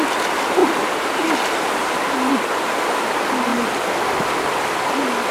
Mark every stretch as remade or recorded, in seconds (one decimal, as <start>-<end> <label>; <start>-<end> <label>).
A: 0.0-0.6 recorded; 0.6-2.3 remade; 2.3-3.5 recorded; 3.5-4.0 remade; 4.0-5.3 recorded